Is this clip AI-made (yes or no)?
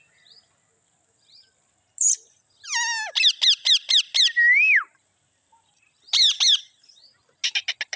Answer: no